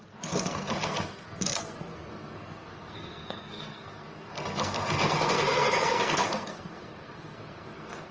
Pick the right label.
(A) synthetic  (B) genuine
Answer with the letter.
A